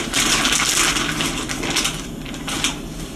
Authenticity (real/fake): real